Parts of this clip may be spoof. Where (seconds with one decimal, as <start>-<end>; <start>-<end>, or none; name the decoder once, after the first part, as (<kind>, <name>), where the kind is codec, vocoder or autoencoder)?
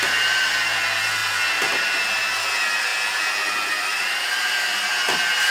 none